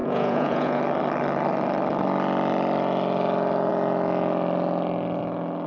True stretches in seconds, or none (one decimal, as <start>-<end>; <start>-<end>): 0.8-5.7